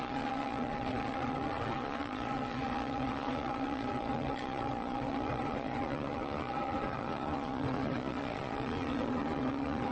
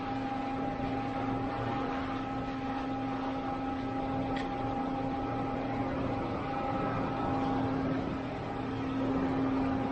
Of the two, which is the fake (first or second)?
first